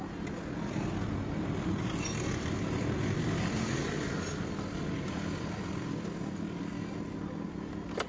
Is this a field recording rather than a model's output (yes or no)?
yes